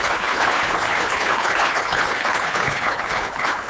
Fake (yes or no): yes